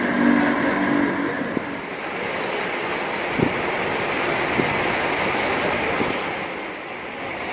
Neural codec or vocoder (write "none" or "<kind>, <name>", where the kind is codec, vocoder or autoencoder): none